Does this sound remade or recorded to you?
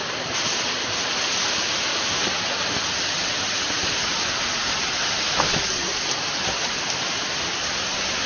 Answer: recorded